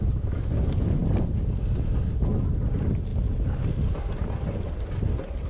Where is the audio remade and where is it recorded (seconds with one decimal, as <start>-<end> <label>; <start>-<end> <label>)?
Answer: 0.0-5.5 recorded